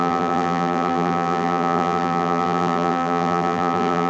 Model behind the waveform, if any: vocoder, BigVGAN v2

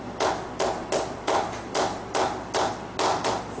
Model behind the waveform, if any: none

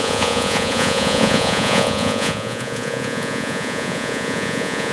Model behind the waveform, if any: vocoder, Vocos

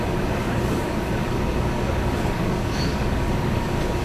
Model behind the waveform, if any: codec, DAC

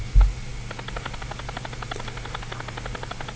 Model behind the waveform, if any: none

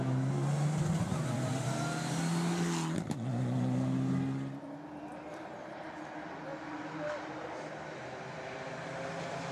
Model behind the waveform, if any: none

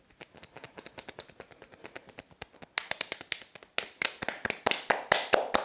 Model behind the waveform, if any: none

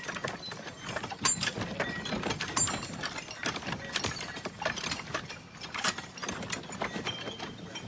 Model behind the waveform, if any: none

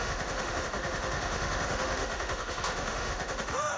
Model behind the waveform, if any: autoencoder, DAC-VAE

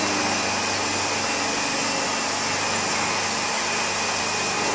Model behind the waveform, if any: none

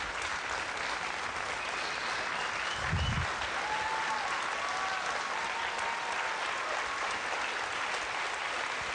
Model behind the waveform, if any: none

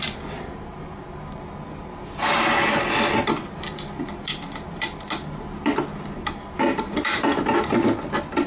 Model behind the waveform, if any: none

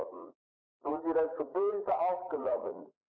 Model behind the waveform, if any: vocoder, Vocos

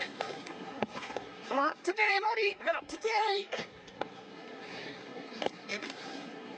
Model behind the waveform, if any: codec, SNAC